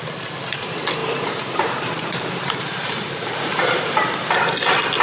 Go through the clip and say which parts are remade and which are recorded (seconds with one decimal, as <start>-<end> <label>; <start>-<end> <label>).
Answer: 0.0-1.0 recorded; 1.0-4.0 remade; 4.0-5.0 recorded